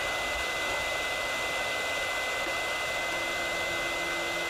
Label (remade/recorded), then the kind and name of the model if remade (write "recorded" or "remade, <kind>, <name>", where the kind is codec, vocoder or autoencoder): recorded